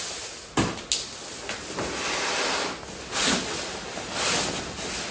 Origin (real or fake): real